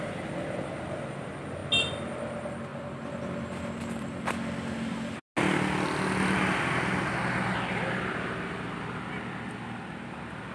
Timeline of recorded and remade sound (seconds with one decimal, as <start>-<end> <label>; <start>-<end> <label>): 0.0-10.5 recorded